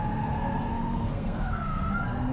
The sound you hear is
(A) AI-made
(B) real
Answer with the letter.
A